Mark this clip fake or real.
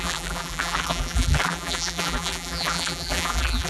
fake